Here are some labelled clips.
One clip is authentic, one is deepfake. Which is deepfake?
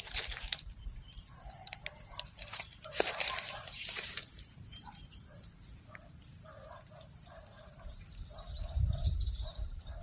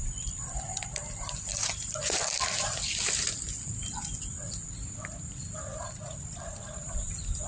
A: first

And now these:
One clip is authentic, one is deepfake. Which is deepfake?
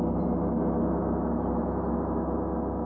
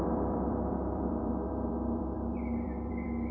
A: second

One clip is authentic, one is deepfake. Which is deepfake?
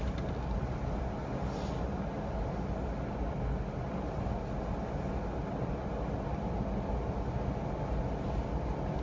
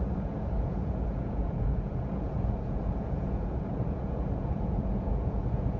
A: second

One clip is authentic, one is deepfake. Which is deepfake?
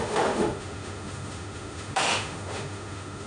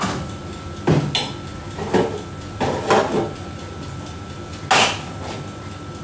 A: first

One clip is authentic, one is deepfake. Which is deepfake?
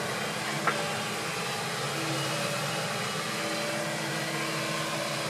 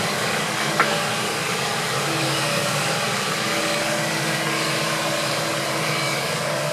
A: second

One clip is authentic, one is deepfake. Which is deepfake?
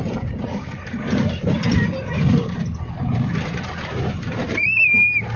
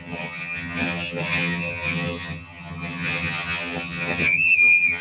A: second